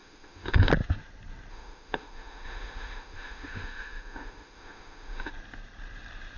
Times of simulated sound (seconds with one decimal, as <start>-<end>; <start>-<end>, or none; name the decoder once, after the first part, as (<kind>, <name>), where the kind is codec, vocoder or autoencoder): 0.0-0.7 (autoencoder, DAC-VAE); 1.5-5.3